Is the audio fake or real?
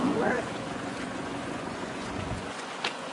fake